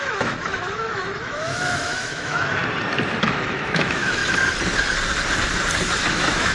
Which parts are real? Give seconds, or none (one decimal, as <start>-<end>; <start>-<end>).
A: 2.6-3.2; 4.2-6.1